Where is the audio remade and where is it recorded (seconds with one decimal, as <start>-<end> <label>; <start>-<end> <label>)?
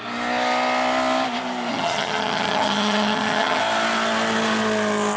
0.0-1.7 recorded; 1.7-3.6 remade; 3.6-5.2 recorded